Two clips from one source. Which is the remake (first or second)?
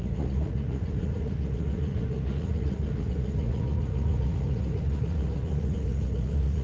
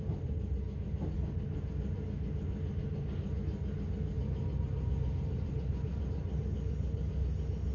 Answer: first